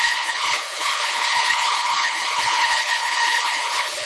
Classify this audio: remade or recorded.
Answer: remade